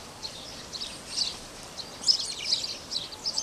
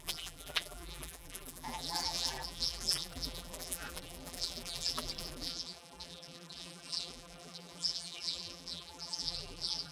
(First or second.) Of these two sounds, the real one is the first